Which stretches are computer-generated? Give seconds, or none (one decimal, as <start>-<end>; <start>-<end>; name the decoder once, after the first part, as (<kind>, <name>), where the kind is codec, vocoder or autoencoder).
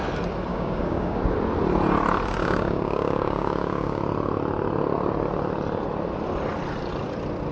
0.5-1.2 (codec, DAC); 2.4-4.0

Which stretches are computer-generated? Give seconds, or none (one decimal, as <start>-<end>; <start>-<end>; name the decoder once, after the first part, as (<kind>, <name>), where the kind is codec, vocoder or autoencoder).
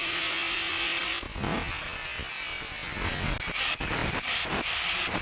none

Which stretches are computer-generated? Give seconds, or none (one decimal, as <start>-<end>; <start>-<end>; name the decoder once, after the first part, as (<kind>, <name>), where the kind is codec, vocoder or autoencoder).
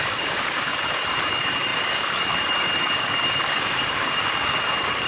0.0-0.7 (codec, DAC); 1.2-5.1